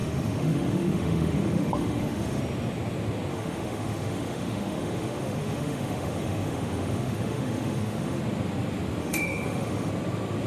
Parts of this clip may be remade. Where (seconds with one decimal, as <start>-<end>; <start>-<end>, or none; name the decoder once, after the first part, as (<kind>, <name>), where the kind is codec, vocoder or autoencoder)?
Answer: 0.0-2.4 (autoencoder, DAC-VAE); 3.3-8.2; 9.0-9.9